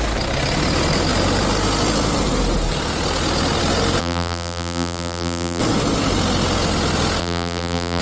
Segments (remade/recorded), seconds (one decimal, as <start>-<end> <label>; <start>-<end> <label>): 0.0-4.0 recorded; 4.0-5.6 remade; 5.6-7.2 recorded; 7.2-8.0 remade